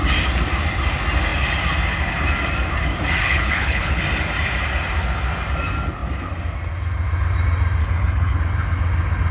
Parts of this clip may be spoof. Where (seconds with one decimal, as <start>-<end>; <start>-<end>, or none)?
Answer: 3.2-4.0; 7.8-8.4